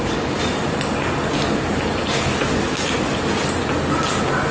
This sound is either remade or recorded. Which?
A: recorded